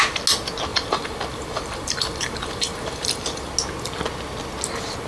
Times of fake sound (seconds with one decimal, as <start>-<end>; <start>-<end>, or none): 0.7-3.5